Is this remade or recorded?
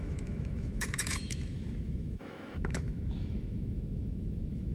remade